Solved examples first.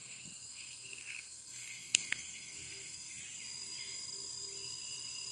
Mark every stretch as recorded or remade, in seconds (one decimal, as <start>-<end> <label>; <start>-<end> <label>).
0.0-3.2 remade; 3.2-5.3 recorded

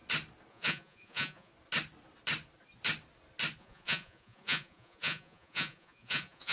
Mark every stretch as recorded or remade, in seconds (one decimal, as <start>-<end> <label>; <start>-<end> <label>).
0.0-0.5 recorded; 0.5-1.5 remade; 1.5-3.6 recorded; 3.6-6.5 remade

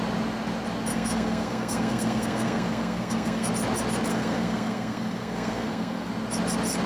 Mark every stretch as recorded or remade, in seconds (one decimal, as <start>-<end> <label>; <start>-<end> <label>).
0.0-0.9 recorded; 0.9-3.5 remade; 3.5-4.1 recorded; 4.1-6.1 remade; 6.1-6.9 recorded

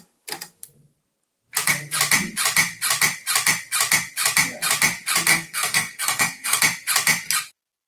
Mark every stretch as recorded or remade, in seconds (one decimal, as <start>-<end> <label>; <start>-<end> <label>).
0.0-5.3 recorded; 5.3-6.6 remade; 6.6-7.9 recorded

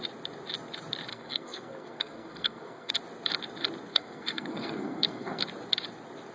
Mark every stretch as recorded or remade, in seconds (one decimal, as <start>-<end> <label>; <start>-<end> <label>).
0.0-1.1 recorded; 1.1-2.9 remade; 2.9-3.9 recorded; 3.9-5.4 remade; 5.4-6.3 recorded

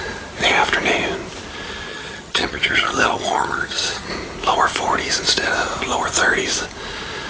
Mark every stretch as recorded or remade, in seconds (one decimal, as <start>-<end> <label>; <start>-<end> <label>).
0.0-1.9 recorded; 1.9-4.1 remade; 4.1-7.3 recorded